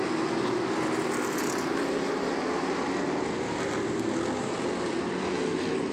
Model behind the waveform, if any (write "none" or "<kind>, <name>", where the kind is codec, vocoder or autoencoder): none